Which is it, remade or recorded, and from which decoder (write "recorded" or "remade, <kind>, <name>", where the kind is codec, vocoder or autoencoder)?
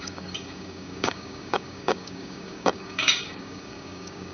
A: remade, codec, DAC